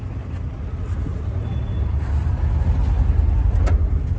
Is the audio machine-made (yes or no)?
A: no